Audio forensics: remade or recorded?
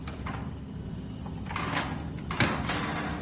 recorded